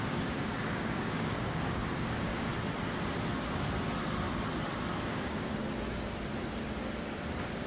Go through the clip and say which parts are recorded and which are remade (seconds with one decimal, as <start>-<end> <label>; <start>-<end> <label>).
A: 0.0-2.5 remade; 2.5-5.1 recorded; 5.1-5.5 remade; 5.5-7.7 recorded